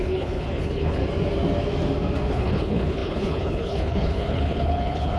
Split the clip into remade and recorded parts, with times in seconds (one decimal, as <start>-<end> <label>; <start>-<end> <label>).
0.0-1.0 remade; 1.0-2.3 recorded; 2.3-5.2 remade